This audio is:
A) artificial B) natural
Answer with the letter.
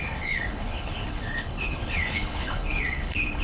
A